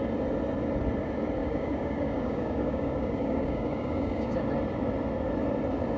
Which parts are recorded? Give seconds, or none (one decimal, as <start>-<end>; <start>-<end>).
0.0-1.4; 4.4-6.0